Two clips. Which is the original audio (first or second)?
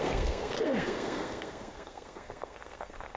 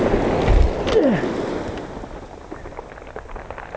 second